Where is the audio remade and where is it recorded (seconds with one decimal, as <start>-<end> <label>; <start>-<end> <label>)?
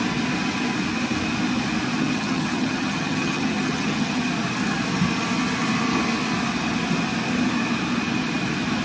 0.0-2.0 recorded; 2.0-4.2 remade; 4.2-8.8 recorded